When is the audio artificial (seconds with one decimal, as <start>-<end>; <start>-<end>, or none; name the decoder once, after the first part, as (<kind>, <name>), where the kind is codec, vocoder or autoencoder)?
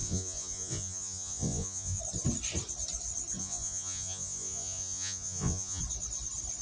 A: 0.0-2.0 (vocoder, Vocos); 3.4-5.8